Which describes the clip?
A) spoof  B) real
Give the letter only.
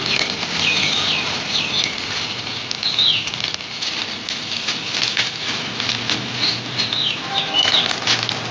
B